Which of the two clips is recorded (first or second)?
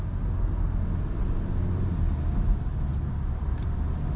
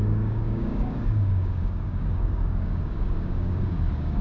first